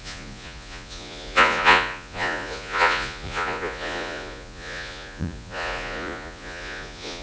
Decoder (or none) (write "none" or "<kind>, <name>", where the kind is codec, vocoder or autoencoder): vocoder, Vocos